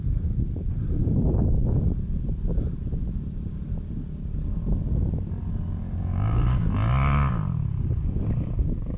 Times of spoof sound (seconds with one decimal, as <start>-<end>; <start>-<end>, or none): 5.8-6.7